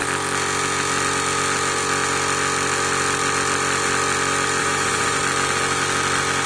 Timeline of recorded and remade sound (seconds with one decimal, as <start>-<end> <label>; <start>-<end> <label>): 0.0-4.6 recorded; 4.6-5.2 remade; 5.2-6.5 recorded